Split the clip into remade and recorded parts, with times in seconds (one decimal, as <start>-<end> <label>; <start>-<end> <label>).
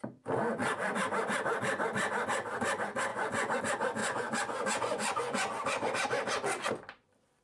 0.0-3.1 recorded; 3.1-3.6 remade; 3.6-4.0 recorded; 4.0-5.9 remade; 5.9-7.4 recorded